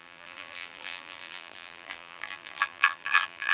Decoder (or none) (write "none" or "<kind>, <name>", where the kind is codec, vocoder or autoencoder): vocoder, BigVGAN v2